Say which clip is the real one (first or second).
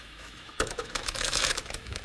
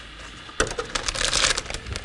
second